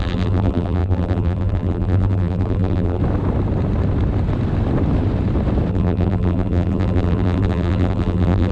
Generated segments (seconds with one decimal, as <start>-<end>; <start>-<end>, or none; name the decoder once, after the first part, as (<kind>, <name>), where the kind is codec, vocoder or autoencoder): 0.0-3.0 (vocoder, BigVGAN v2); 5.7-8.5